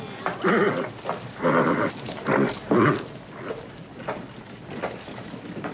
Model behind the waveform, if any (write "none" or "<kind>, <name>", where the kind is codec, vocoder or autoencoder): none